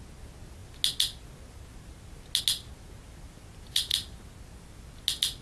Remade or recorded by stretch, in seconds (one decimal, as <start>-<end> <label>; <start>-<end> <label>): 0.0-5.4 recorded